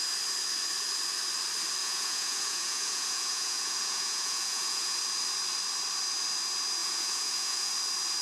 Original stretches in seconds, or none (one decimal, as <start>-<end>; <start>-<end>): 0.0-1.8; 5.0-6.8; 7.7-8.2